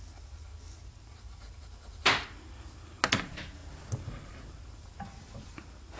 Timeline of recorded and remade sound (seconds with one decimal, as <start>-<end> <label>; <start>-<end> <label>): 0.0-6.0 recorded